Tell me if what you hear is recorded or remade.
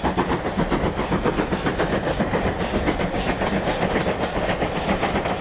recorded